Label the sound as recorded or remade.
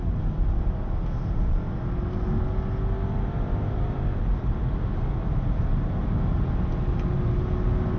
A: recorded